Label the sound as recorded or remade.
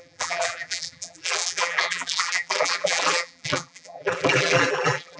remade